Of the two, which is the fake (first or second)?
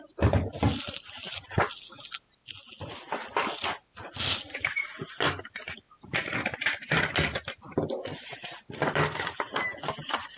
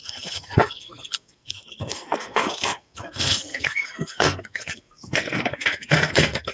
second